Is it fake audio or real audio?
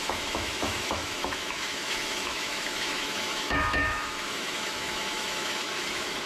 fake